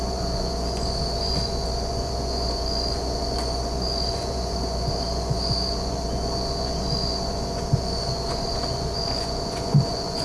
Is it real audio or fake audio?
fake